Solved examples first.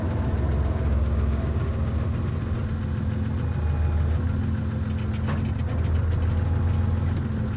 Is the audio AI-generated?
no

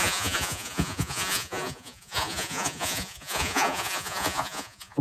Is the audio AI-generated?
yes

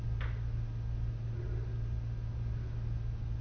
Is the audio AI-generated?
no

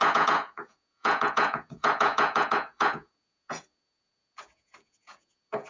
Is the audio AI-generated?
yes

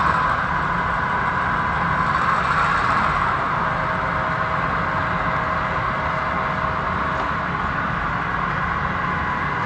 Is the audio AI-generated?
no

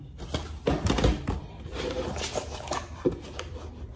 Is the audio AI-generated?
no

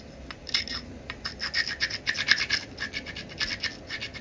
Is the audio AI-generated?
no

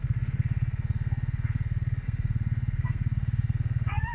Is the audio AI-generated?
yes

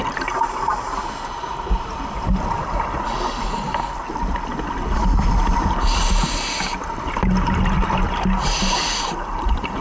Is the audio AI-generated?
no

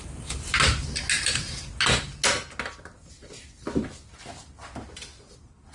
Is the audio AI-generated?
no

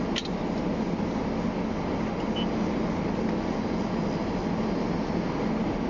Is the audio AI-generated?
no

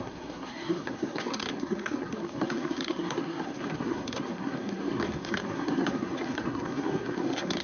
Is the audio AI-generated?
yes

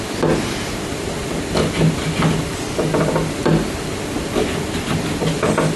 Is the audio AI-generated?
no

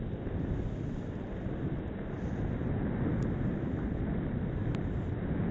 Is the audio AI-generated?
no